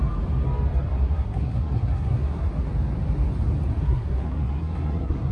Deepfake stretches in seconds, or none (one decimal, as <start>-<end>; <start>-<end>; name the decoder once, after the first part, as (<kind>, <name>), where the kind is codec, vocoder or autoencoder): 0.9-2.5 (codec, SNAC); 3.8-5.3